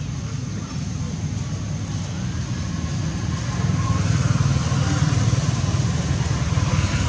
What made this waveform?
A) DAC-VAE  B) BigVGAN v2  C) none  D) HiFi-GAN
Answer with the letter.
C